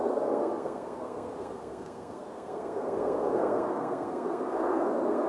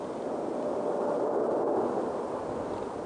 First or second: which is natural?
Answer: second